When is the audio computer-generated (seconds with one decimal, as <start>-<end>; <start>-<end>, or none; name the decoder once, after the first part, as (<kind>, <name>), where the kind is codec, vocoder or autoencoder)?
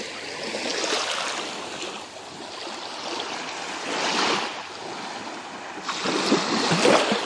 none